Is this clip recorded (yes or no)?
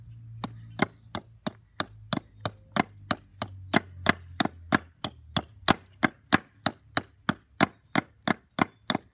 yes